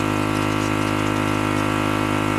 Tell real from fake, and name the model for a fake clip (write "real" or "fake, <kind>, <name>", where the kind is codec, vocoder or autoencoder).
real